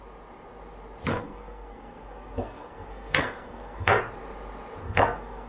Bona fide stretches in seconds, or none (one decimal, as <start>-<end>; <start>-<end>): 0.0-1.1; 4.0-4.8